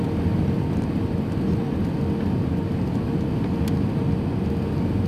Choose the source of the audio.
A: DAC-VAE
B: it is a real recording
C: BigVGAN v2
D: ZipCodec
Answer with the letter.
B